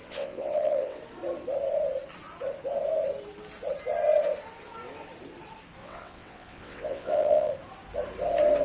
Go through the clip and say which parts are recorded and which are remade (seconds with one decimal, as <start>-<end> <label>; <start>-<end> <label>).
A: 0.0-1.0 remade; 1.0-5.8 recorded; 5.8-7.5 remade; 7.5-8.6 recorded